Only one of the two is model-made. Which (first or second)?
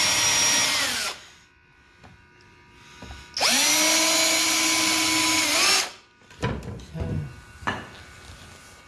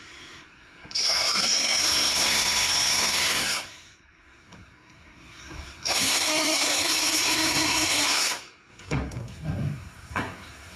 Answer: second